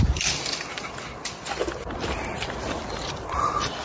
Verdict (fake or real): fake